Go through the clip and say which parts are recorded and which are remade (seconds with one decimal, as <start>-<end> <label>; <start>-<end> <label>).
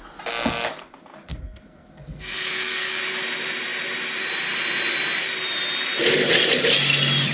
0.0-1.3 recorded; 1.3-3.0 remade; 3.0-7.3 recorded